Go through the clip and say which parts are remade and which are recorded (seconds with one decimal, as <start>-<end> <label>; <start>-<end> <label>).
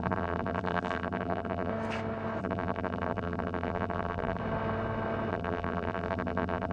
0.0-1.7 remade; 1.7-2.4 recorded; 2.4-4.4 remade; 4.4-5.3 recorded; 5.3-6.7 remade